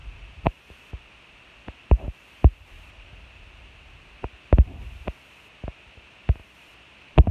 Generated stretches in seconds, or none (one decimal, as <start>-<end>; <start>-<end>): 0.0-1.0; 6.4-7.3